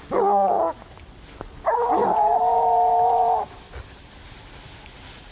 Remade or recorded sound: recorded